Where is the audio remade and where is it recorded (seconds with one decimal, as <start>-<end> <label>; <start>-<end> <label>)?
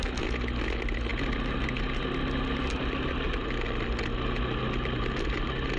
0.0-5.8 recorded